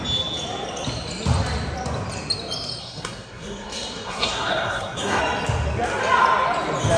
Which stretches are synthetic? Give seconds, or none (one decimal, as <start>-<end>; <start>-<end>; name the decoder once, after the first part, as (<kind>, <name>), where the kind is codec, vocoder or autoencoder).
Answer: 2.8-5.2 (codec, SNAC)